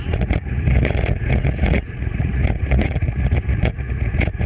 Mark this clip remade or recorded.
remade